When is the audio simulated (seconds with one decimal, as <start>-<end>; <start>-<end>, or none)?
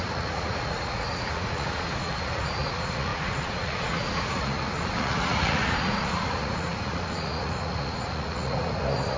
0.0-9.2